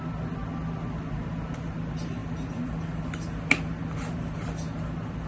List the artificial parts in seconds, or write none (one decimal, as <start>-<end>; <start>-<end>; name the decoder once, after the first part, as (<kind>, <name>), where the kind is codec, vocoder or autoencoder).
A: none